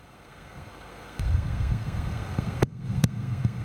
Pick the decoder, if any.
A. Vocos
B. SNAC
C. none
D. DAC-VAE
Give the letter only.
B